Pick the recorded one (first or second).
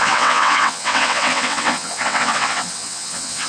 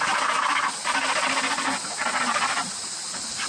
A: second